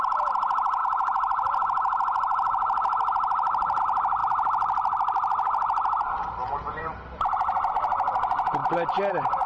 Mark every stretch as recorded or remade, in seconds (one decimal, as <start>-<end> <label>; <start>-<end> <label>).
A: 0.0-8.6 remade; 8.6-9.1 recorded; 9.1-9.5 remade